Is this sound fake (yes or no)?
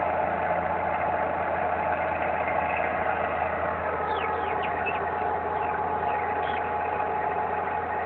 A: no